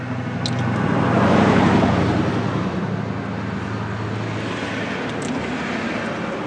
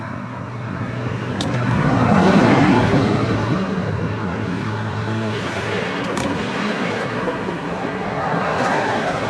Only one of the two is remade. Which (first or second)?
second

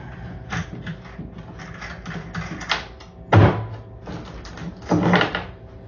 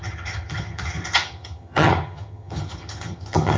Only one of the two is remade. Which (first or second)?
second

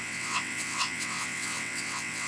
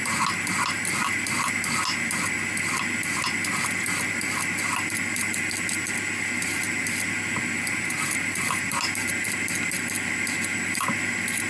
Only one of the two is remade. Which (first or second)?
first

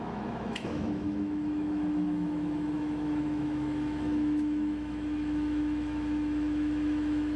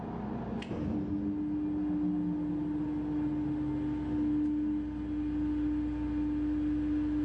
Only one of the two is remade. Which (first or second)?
first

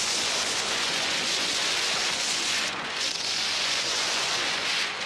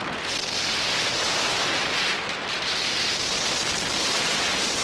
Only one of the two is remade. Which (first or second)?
first